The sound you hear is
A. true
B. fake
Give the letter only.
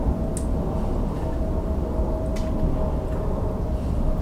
A